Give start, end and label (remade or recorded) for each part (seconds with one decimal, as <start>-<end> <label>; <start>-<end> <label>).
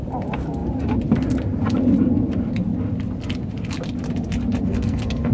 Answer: 0.0-4.6 recorded; 4.6-5.3 remade